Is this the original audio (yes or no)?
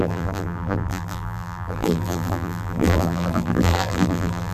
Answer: no